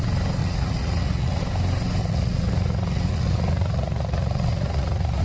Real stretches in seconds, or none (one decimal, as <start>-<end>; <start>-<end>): 0.0-0.4; 1.4-2.0